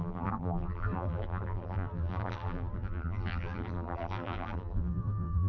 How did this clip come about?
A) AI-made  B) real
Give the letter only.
A